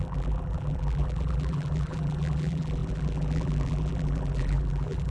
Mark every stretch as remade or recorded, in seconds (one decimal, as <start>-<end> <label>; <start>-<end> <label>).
0.0-5.1 remade